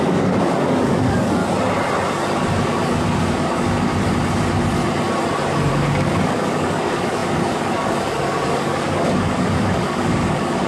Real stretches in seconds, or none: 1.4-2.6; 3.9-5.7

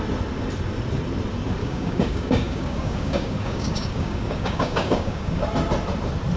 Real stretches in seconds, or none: 0.0-1.6; 5.4-6.4

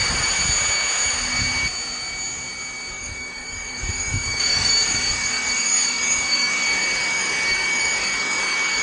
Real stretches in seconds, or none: 0.0-2.9

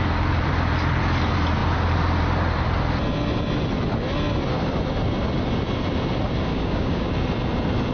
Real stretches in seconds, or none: 0.0-6.5; 7.1-7.9

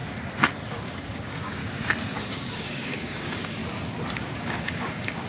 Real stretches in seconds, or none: 0.0-0.7; 1.6-2.2; 3.6-4.2